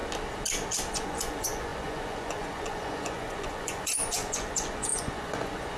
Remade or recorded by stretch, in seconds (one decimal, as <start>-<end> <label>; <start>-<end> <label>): 0.0-0.9 recorded; 0.9-5.8 remade